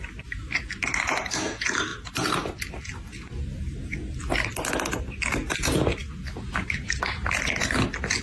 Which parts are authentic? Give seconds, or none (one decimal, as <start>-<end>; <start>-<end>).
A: 0.0-8.2